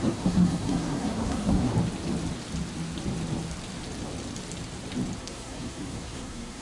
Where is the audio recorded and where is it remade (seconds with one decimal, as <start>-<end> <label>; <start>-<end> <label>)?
0.0-1.7 remade; 1.7-5.2 recorded; 5.2-6.6 remade